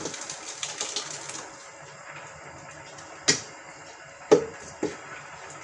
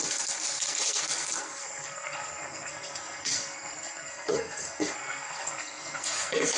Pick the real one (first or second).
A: first